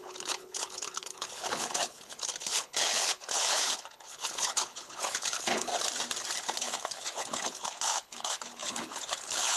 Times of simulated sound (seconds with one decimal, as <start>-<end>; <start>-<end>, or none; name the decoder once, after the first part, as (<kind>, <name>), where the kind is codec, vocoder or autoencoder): 0.0-5.7 (codec, HILCodec); 6.4-9.6